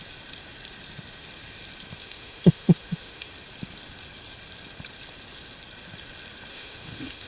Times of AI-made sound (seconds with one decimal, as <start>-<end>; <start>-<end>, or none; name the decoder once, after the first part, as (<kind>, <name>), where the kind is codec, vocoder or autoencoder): 2.0-3.3 (autoencoder, DAC-VAE); 6.5-7.3

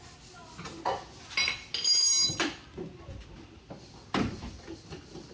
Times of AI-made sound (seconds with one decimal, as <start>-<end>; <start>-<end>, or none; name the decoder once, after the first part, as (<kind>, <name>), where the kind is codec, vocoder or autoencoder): none

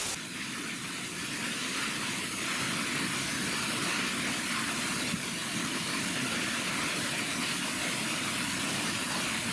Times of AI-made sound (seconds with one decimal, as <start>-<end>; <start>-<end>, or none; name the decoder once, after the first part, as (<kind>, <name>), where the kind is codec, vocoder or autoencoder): none